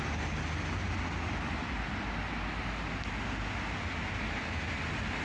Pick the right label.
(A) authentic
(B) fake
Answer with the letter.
A